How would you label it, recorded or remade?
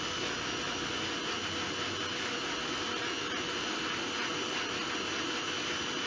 recorded